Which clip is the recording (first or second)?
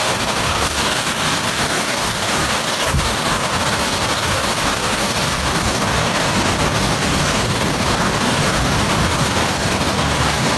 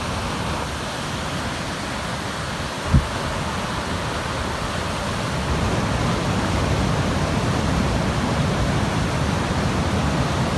second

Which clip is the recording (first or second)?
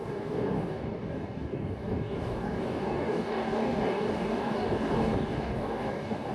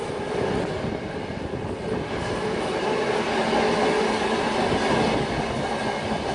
second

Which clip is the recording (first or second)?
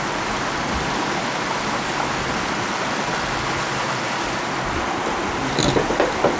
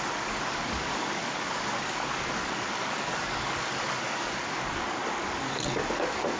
first